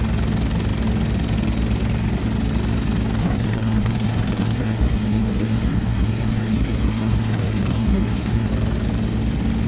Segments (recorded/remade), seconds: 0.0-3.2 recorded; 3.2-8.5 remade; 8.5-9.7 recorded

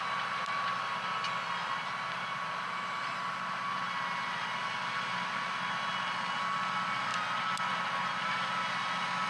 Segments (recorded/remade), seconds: 0.0-9.3 recorded